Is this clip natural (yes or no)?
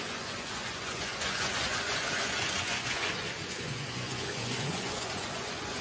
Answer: no